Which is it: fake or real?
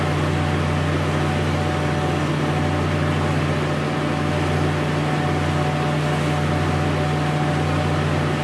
real